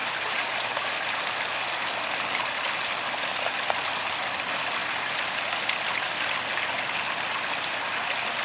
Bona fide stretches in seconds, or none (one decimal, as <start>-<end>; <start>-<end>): 0.0-8.4